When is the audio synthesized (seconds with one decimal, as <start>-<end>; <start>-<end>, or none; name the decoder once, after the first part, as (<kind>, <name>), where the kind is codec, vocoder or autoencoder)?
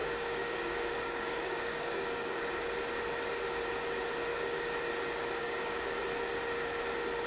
0.0-2.4 (codec, DAC); 4.3-4.9; 5.4-6.0